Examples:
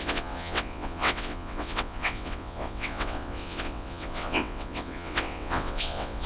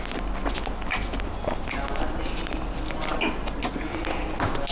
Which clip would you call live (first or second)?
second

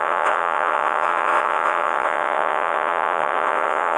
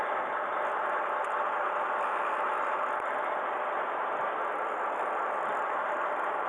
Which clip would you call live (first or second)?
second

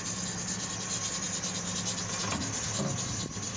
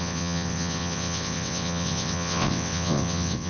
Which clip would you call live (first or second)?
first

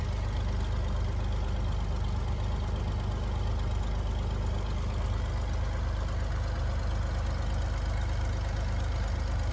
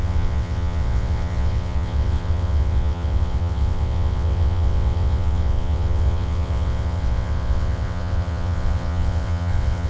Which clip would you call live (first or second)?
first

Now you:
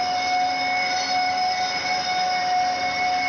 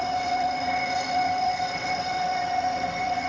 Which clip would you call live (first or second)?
first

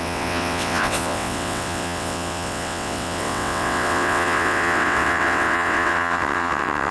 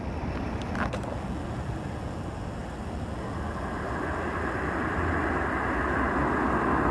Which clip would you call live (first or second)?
second